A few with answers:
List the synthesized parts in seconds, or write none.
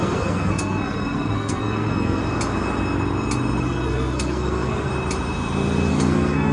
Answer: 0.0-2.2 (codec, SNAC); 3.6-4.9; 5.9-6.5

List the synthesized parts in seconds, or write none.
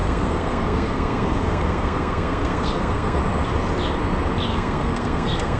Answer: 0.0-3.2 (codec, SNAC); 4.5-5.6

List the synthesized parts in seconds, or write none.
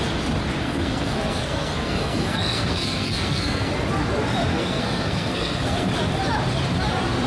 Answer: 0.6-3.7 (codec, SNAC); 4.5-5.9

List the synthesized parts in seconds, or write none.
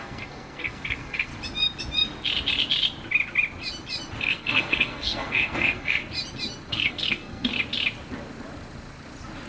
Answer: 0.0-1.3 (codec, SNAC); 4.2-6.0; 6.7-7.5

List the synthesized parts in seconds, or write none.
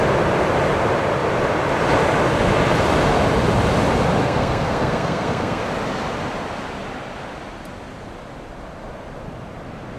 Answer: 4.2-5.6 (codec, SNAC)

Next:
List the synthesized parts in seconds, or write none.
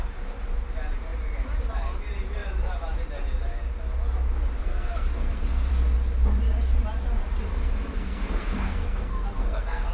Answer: 4.6-5.7 (codec, SNAC); 7.5-9.9